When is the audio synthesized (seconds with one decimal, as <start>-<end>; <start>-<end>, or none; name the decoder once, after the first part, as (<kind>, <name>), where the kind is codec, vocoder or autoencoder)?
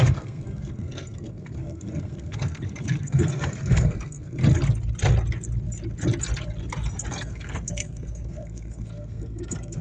0.0-4.4 (codec, SNAC); 7.1-9.8